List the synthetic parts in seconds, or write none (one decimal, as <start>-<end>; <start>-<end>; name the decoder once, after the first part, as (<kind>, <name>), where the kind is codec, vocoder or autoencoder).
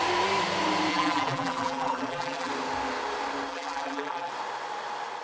0.9-2.5 (vocoder, BigVGAN v2); 3.5-4.3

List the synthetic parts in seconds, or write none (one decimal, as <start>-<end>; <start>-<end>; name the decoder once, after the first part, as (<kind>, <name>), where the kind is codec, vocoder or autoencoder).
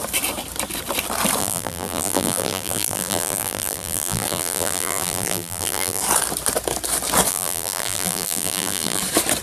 1.4-6.0 (vocoder, BigVGAN v2); 7.3-9.0